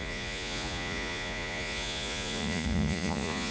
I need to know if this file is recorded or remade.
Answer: remade